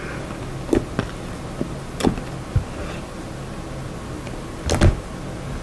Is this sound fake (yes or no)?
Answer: no